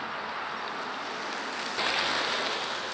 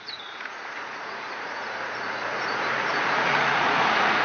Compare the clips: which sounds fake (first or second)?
second